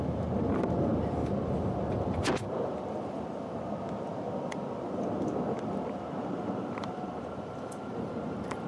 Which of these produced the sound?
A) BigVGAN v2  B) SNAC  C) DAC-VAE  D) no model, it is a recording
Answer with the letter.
A